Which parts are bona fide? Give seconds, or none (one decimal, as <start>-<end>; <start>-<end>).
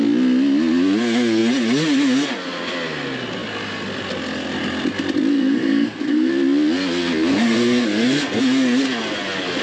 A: 0.0-5.3; 6.3-7.3; 8.4-9.6